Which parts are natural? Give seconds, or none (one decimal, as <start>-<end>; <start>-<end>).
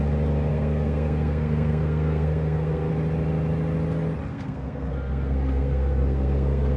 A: 0.0-0.5; 2.9-4.3